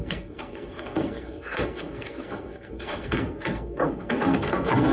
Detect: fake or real fake